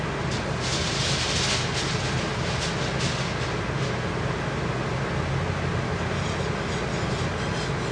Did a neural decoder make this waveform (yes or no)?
no